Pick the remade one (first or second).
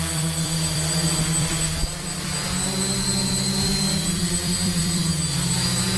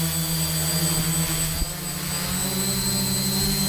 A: first